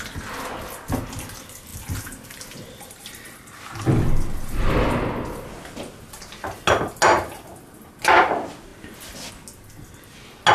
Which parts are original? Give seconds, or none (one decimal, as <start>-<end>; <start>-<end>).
0.0-10.5